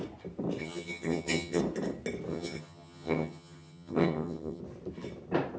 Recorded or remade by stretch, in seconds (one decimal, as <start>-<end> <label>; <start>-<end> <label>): 0.0-0.6 recorded; 0.6-1.6 remade; 1.6-2.3 recorded; 2.3-4.6 remade; 4.6-5.6 recorded